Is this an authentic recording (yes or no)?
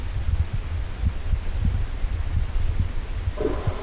no